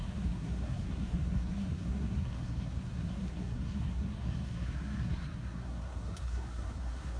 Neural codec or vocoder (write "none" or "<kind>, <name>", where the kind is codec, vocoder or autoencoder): codec, SNAC